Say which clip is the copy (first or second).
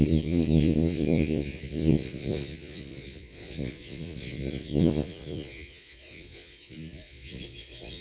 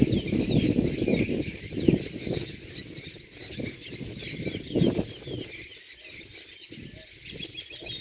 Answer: first